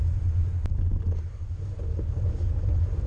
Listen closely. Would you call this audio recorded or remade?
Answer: recorded